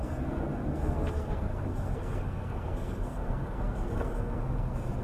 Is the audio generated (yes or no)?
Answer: yes